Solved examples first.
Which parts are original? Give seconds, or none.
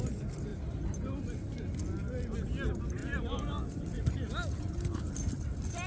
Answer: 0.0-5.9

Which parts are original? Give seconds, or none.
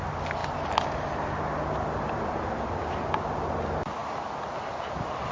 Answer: 0.0-5.3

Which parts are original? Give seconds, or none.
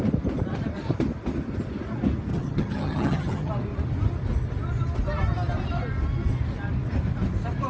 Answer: 0.0-2.3; 3.5-7.7